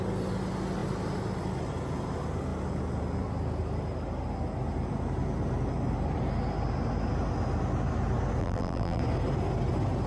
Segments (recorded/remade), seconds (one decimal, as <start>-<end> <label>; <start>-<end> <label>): 0.0-8.4 recorded; 8.4-9.0 remade; 9.0-10.1 recorded